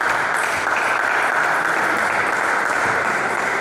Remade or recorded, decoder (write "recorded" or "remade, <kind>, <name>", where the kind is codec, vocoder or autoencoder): remade, vocoder, BigVGAN v2